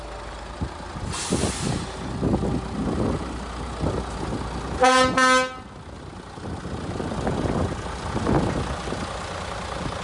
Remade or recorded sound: recorded